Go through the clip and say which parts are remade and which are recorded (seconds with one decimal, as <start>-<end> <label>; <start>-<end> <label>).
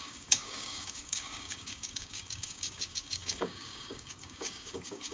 0.0-5.1 remade